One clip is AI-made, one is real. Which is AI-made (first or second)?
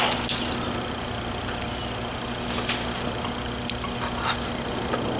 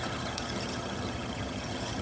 second